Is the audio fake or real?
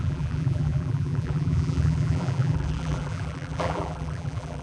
fake